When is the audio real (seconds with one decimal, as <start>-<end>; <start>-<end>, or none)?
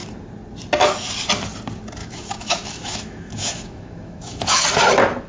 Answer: 0.0-2.0; 4.6-5.3